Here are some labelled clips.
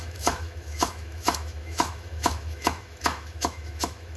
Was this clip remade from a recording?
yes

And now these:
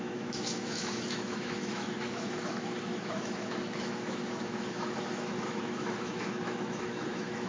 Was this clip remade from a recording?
yes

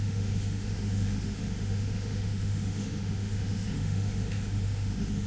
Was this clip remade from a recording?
yes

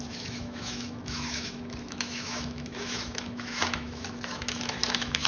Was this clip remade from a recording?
yes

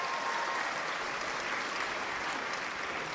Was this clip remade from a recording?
no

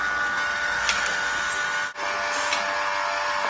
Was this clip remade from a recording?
no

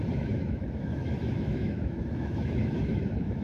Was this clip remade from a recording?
yes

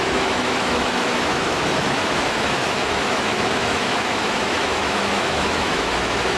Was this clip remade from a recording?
yes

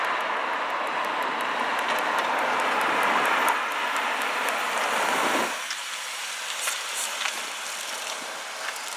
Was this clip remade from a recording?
no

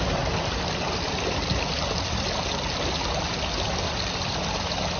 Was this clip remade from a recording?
no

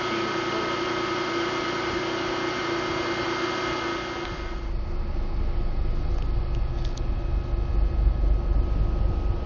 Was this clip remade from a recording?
no